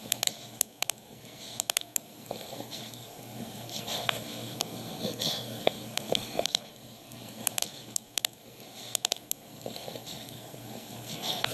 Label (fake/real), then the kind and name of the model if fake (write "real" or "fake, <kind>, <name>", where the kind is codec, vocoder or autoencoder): fake, codec, SNAC